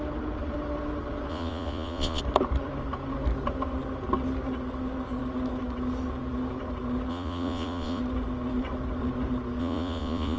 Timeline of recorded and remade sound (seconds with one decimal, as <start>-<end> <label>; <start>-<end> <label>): 0.0-1.3 recorded; 1.3-2.2 remade; 2.2-7.1 recorded; 7.1-8.0 remade; 8.0-9.6 recorded; 9.6-10.4 remade